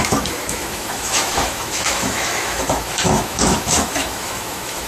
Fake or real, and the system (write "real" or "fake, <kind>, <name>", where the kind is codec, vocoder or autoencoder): fake, autoencoder, DAC-VAE